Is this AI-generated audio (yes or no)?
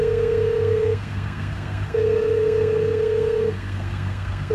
yes